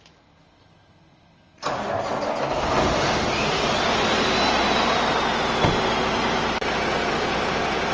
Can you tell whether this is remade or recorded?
recorded